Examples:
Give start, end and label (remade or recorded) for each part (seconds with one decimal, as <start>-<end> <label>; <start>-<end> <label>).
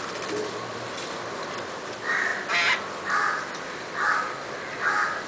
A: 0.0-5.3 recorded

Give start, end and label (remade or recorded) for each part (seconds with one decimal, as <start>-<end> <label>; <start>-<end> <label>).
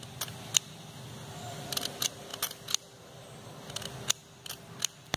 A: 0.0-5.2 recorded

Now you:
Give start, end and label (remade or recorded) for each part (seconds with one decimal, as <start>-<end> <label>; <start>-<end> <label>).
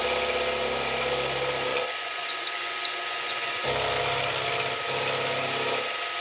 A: 0.0-1.7 recorded; 1.7-3.6 remade; 3.6-6.2 recorded